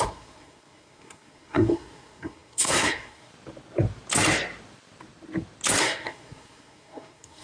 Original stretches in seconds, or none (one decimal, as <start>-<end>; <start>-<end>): 3.3-5.8